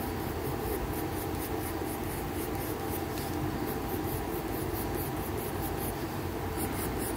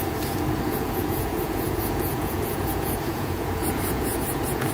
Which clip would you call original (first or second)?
first